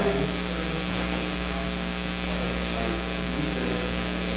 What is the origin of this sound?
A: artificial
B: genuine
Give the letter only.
A